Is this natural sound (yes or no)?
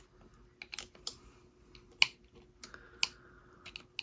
yes